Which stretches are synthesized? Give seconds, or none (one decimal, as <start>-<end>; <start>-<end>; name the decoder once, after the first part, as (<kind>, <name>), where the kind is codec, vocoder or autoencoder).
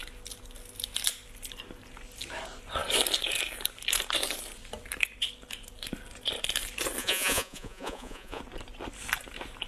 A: 7.0-8.4 (vocoder, Vocos)